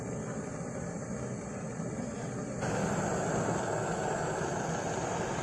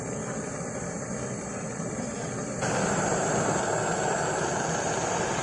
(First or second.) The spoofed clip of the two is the second